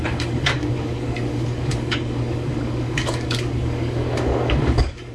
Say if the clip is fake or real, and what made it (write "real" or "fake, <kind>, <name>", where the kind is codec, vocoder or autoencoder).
fake, codec, DAC